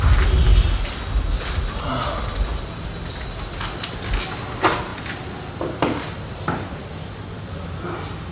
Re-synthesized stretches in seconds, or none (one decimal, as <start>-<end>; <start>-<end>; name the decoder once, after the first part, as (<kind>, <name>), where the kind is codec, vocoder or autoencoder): 4.9-5.5 (vocoder, BigVGAN v2)